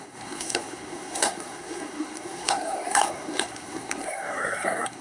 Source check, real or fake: fake